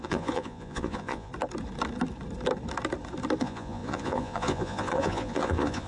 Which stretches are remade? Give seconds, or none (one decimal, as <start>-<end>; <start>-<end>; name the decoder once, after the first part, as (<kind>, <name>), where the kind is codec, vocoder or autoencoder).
0.0-1.3 (vocoder, Vocos); 3.4-5.9